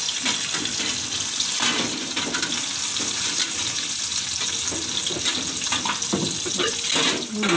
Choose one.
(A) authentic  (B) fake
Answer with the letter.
A